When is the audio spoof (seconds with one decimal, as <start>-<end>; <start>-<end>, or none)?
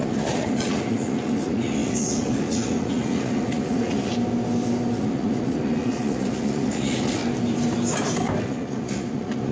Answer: 0.0-4.1; 5.0-7.2; 8.4-9.5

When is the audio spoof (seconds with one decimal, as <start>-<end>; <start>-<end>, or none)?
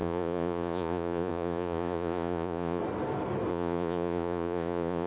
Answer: 0.0-2.8; 3.5-5.1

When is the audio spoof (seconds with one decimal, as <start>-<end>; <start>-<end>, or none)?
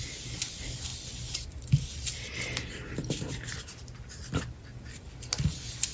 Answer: none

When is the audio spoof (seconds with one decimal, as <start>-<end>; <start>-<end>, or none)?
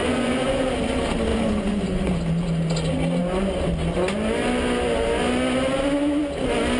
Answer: 0.0-0.6; 1.3-2.2